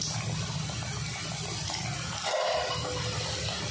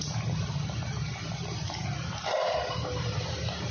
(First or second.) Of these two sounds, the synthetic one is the second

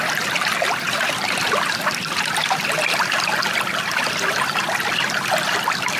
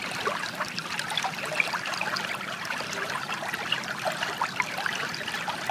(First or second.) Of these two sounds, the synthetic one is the second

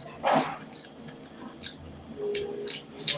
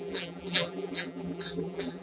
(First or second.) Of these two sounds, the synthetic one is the second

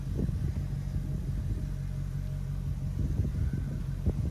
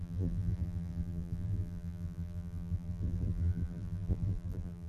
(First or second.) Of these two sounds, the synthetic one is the second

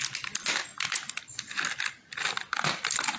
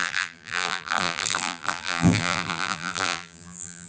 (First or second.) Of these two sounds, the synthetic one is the second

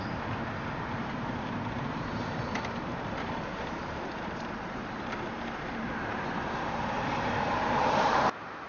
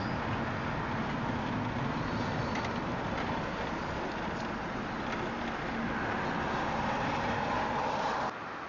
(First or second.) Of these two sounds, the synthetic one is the first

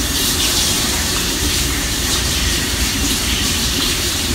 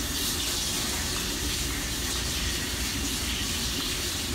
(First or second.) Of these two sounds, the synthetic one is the first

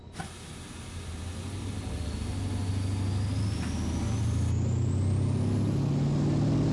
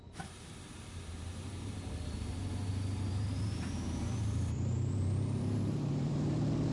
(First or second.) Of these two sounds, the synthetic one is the second